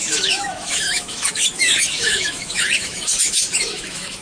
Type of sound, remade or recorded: remade